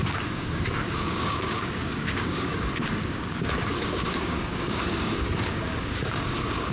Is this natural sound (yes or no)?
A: no